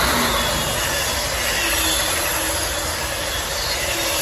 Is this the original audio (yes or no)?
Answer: yes